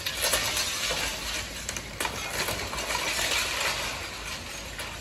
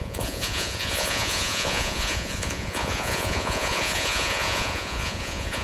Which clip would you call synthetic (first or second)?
second